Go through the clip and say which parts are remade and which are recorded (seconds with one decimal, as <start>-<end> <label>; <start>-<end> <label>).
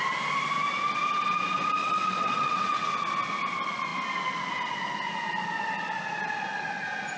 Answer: 0.0-1.8 recorded; 1.8-2.9 remade; 2.9-7.2 recorded